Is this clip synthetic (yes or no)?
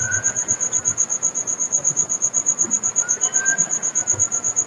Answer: no